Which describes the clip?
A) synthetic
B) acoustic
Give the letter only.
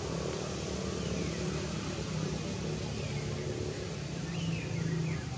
B